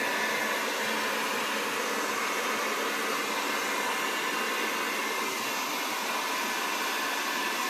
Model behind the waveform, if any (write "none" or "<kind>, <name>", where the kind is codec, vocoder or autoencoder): none